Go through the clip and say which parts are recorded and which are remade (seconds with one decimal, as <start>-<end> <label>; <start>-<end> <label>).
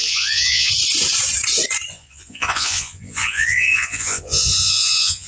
0.0-0.7 remade; 0.7-1.9 recorded; 1.9-5.3 remade